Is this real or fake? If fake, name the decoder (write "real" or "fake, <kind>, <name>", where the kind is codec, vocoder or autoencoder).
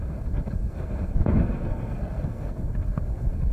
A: fake, codec, SNAC